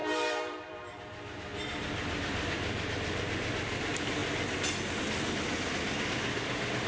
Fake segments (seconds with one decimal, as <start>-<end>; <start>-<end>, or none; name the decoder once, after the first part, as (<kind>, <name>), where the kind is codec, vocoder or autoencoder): 0.0-0.9 (vocoder, BigVGAN v2); 1.5-3.2

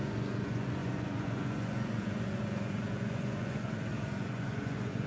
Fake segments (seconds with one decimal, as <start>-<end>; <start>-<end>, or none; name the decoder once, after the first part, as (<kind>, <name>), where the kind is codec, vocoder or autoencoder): 0.0-5.1 (vocoder, Vocos)

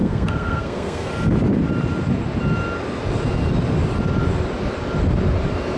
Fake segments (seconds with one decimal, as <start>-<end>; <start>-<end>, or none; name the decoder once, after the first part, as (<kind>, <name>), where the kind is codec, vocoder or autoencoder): 0.0-1.1 (codec, SNAC)

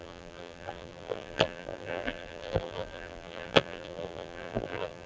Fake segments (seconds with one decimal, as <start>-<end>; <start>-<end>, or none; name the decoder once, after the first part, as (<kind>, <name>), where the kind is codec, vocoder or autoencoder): 0.0-5.1 (vocoder, BigVGAN v2)